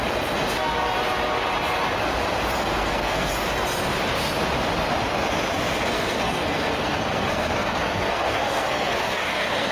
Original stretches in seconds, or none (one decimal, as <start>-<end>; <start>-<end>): 0.0-2.7; 3.3-5.9